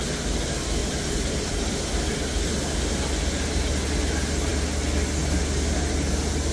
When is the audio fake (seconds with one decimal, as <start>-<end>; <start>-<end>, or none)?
0.8-3.1